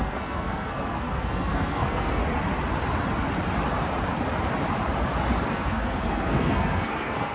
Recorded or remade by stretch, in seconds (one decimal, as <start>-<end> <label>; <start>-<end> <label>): 0.0-2.2 remade; 2.2-5.5 recorded; 5.5-7.3 remade